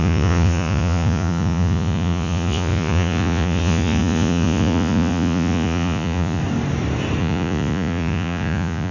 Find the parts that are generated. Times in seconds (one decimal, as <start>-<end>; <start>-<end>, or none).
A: 0.0-6.4; 7.2-8.9